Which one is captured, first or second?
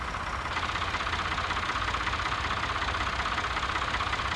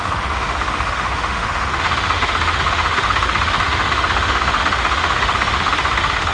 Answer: first